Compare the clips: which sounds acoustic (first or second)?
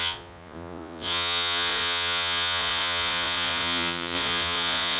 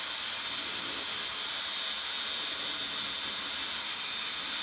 second